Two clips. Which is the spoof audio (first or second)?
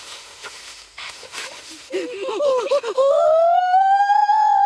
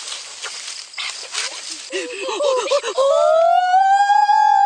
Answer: first